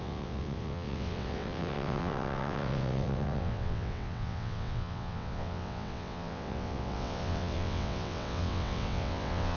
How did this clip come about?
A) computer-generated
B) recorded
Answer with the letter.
A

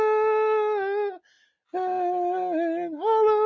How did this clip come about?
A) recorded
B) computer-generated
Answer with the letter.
A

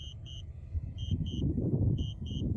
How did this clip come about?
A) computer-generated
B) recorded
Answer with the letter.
A